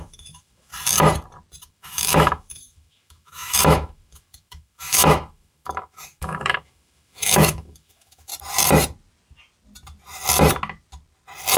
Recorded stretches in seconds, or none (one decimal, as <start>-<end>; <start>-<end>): 0.7-1.7; 8.3-11.6